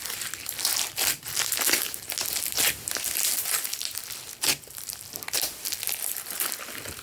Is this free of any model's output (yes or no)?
yes